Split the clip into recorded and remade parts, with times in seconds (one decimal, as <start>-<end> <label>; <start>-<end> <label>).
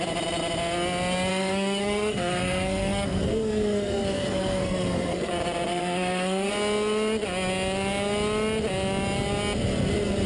0.0-1.3 recorded; 1.3-5.3 remade; 5.3-5.7 recorded; 5.7-6.5 remade; 6.5-10.3 recorded